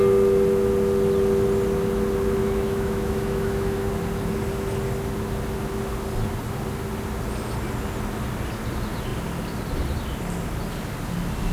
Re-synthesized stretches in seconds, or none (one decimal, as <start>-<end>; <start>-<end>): 2.4-3.9